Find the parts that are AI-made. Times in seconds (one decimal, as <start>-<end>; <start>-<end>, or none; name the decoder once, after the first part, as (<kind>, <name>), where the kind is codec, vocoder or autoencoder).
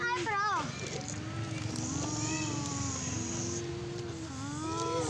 none